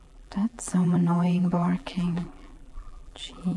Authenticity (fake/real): fake